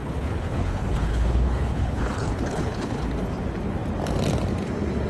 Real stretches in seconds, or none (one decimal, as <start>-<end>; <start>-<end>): 3.1-5.1